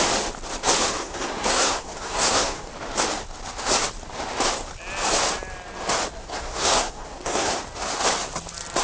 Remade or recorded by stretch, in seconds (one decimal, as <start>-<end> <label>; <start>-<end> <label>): 0.0-1.0 recorded; 1.0-2.7 remade; 2.7-6.2 recorded; 6.2-7.6 remade; 7.6-8.8 recorded